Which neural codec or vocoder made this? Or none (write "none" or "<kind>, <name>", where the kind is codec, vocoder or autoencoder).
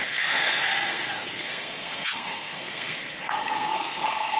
codec, SNAC